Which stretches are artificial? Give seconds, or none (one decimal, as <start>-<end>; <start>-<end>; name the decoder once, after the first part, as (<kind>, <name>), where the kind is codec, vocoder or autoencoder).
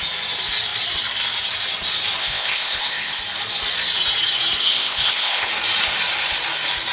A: 2.2-3.2 (codec, ZipCodec); 4.6-5.5